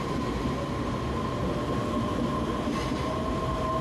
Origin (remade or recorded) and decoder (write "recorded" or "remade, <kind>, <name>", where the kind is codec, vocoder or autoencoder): recorded